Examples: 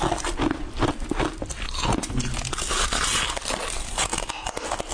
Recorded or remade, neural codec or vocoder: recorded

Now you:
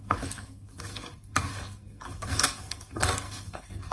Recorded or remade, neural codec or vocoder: remade, codec, SNAC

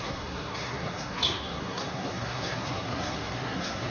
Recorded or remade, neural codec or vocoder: remade, codec, SNAC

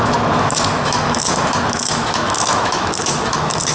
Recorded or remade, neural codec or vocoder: remade, autoencoder, DAC-VAE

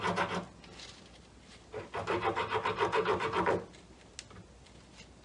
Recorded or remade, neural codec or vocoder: recorded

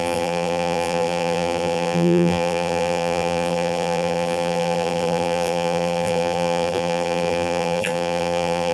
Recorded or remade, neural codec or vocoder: remade, vocoder, BigVGAN v2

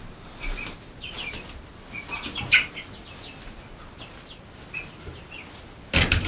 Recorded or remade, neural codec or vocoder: recorded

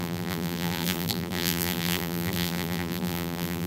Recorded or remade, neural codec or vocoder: remade, vocoder, BigVGAN v2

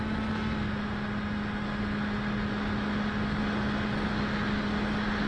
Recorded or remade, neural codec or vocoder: recorded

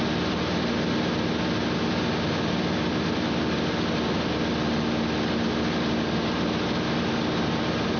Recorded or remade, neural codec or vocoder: recorded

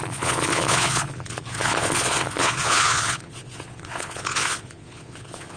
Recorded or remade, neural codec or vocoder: remade, vocoder, Vocos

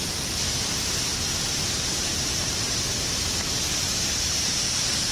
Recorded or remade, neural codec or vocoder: recorded